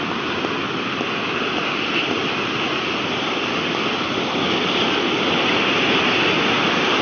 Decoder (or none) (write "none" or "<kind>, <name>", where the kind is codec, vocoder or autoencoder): none